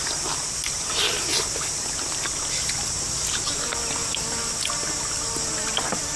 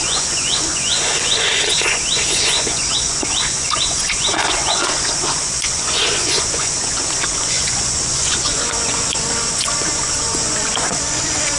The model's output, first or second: second